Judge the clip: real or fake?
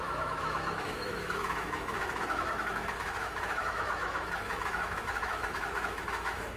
fake